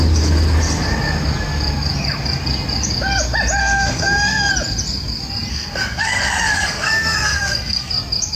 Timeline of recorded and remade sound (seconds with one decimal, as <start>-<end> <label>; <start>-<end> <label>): 0.0-3.6 recorded; 3.6-4.5 remade; 4.5-5.5 recorded; 5.5-7.9 remade; 7.9-8.4 recorded